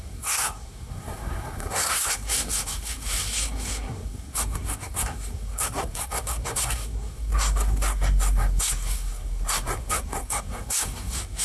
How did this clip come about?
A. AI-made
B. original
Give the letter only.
A